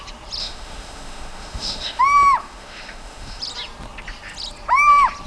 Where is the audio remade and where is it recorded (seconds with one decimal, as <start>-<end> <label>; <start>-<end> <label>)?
0.0-0.4 recorded; 0.4-2.0 remade; 2.0-2.4 recorded; 2.4-3.4 remade; 3.4-5.3 recorded